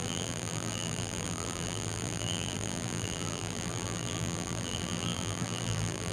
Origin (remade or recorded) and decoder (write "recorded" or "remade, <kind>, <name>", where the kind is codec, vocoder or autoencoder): remade, vocoder, BigVGAN v2